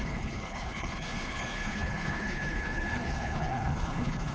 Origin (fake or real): fake